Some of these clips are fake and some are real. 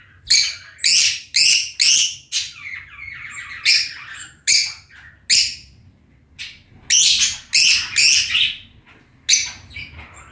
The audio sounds real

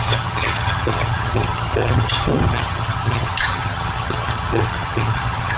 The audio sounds fake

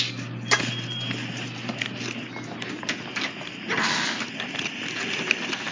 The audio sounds real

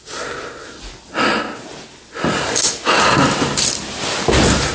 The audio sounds real